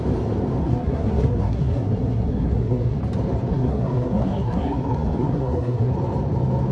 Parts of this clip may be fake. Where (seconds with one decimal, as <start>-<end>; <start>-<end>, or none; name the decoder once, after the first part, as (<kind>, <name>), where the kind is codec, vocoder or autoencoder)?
0.6-3.0 (codec, SNAC); 3.5-5.9